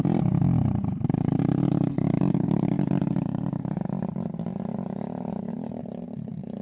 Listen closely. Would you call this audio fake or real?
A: real